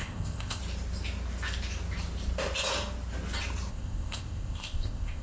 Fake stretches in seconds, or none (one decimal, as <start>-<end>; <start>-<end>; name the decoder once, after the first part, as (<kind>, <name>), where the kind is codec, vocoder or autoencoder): 0.0-0.6 (codec, ZipCodec); 3.7-5.2